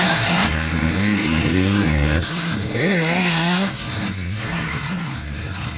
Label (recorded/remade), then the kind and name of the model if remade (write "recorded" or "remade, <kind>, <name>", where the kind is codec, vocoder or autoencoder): remade, codec, SNAC